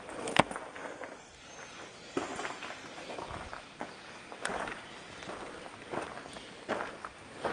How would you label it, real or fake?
real